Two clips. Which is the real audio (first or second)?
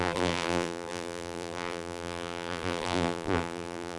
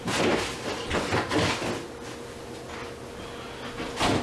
second